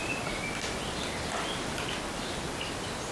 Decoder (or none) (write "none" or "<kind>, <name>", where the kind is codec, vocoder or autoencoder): none